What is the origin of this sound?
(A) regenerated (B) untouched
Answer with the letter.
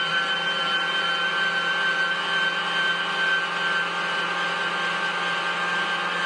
B